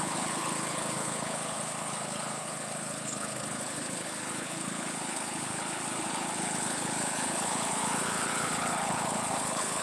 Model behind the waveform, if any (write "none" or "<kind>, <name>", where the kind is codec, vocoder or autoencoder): codec, HILCodec